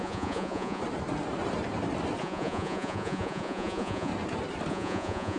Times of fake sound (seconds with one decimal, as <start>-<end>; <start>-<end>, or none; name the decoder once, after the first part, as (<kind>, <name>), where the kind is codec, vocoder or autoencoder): 0.0-0.8 (vocoder, Vocos); 2.2-4.1; 4.7-5.4